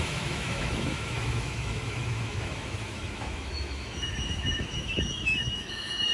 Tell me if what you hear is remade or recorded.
remade